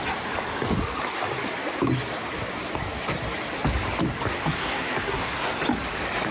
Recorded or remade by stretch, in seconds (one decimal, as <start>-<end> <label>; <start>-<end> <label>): 0.0-4.3 recorded; 4.3-5.5 remade; 5.5-6.3 recorded